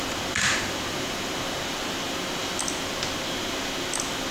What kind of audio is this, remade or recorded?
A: recorded